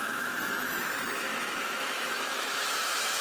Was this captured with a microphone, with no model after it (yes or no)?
no